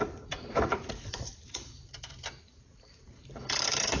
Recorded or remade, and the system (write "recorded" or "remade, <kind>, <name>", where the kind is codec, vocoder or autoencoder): remade, vocoder, BigVGAN v2